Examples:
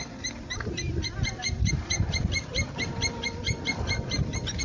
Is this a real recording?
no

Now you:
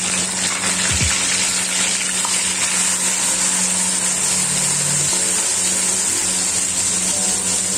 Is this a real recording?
yes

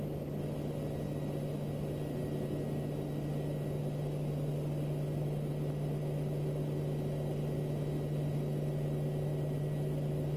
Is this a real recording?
yes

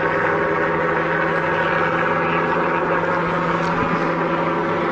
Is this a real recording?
yes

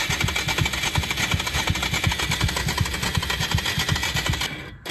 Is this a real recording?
yes